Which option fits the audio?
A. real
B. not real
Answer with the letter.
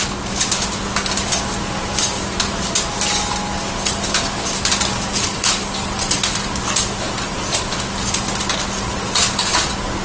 A